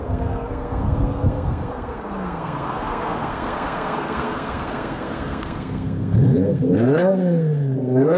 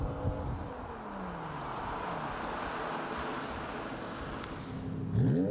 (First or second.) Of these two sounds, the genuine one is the second